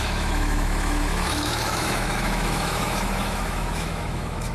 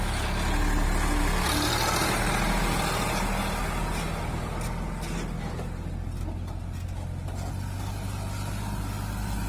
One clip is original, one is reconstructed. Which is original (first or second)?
second